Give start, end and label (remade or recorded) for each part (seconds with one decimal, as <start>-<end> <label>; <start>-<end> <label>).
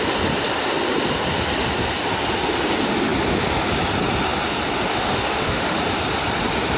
0.0-4.9 recorded; 4.9-5.8 remade; 5.8-6.8 recorded